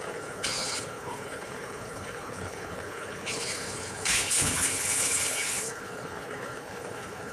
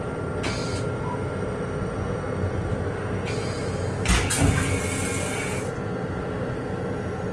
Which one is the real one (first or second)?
second